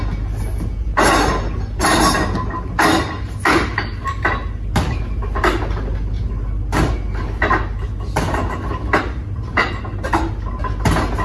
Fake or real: real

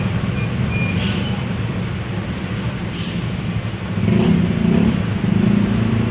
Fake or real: real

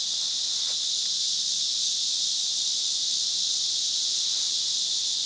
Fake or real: real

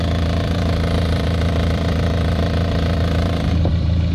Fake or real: fake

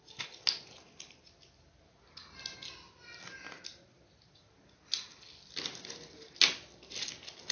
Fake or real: real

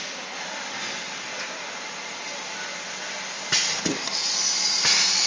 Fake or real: real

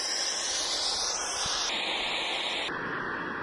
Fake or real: real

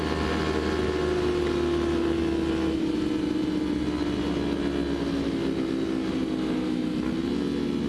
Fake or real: real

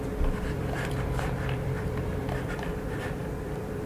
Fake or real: fake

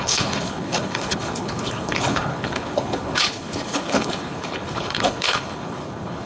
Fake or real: fake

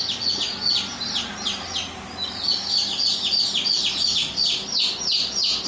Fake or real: real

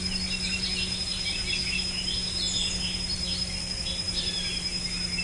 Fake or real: real